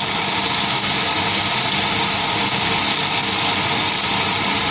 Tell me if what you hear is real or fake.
real